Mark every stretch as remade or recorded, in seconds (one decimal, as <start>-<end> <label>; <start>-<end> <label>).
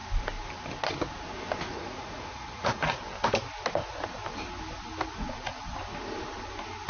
0.0-1.7 recorded; 1.7-3.0 remade; 3.0-5.1 recorded; 5.1-5.7 remade; 5.7-6.9 recorded